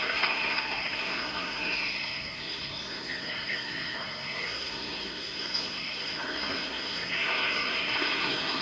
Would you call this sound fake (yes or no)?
yes